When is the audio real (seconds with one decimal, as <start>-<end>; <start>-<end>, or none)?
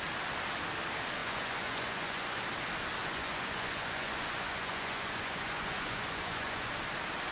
0.0-1.2; 2.4-3.0; 6.7-7.3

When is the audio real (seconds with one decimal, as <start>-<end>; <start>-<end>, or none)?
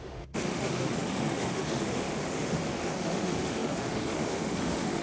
none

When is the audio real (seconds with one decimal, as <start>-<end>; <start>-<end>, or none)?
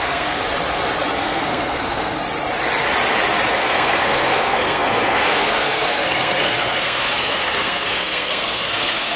0.4-1.2; 2.2-3.5